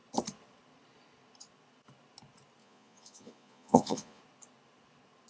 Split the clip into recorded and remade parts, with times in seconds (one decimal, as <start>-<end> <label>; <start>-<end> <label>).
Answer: 0.0-2.6 recorded; 2.6-4.2 remade; 4.2-5.3 recorded